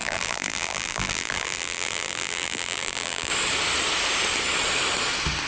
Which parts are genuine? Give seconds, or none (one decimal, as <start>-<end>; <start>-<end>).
3.3-5.5